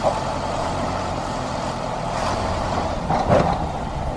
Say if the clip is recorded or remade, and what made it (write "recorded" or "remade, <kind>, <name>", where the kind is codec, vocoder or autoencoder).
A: remade, vocoder, BigVGAN v2